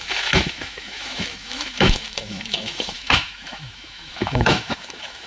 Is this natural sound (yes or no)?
no